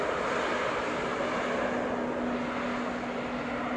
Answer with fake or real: real